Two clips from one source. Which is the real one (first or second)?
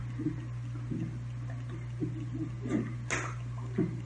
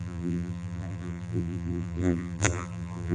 first